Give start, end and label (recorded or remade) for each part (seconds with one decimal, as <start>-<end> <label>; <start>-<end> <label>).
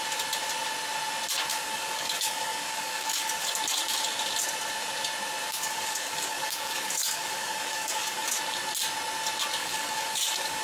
0.0-1.5 recorded; 1.5-3.5 remade; 3.5-5.4 recorded; 5.4-8.3 remade; 8.3-9.6 recorded; 9.6-10.6 remade